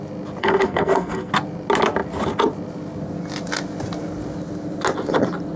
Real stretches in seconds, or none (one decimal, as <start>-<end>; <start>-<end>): 0.0-0.4; 1.3-5.6